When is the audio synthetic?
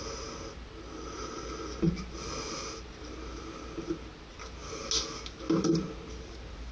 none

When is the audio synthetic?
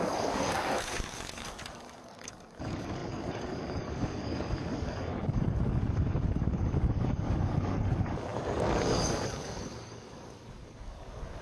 0.0-11.4 (codec, DAC)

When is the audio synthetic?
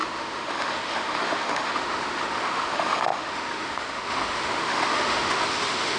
0.0-6.0 (autoencoder, DAC-VAE)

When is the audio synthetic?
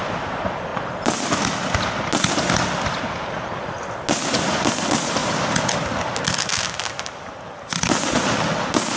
none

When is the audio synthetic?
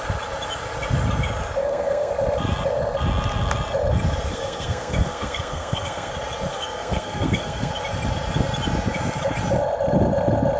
1.6-2.1 (codec, SNAC); 4.3-6.1; 6.5-7.7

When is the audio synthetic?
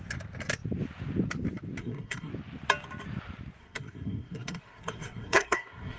1.8-2.3 (codec, SNAC); 3.6-6.0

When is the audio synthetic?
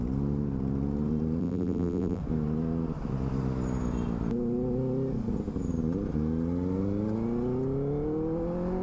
1.4-2.2 (vocoder, BigVGAN v2)